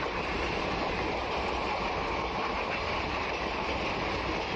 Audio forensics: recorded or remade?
recorded